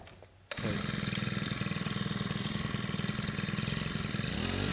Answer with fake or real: real